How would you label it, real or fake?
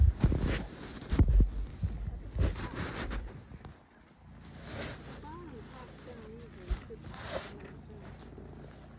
real